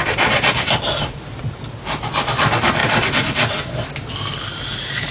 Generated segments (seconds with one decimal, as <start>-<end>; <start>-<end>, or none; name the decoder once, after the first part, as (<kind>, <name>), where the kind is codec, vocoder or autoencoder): 0.0-2.1 (vocoder, BigVGAN v2)